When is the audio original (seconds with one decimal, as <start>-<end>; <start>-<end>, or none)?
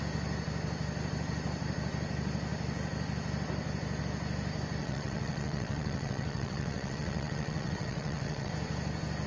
0.0-4.8; 8.5-9.3